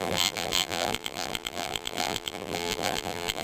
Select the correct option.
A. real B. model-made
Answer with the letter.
B